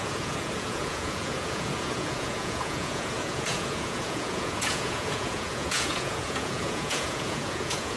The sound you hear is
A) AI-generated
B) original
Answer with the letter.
A